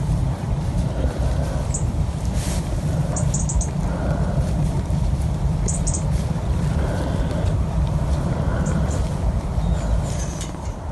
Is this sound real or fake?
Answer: fake